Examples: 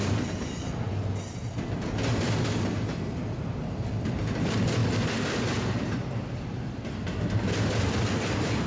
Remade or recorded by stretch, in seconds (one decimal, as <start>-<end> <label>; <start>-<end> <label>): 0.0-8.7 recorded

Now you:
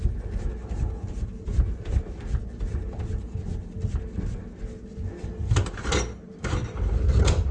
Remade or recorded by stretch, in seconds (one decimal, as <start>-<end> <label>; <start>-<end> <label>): 0.0-7.5 recorded

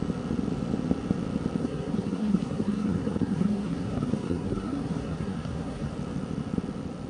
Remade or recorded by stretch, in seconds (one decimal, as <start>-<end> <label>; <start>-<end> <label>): 0.0-1.6 recorded; 1.6-5.9 remade; 5.9-7.1 recorded

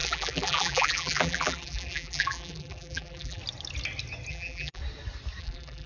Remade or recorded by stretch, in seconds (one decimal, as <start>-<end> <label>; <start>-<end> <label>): 0.0-3.4 remade; 3.4-4.3 recorded; 4.3-4.8 remade; 4.8-5.4 recorded; 5.4-5.9 remade